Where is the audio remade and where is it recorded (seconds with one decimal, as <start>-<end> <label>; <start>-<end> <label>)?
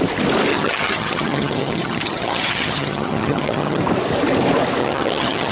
0.0-0.5 recorded; 0.5-3.8 remade; 3.8-4.8 recorded; 4.8-5.5 remade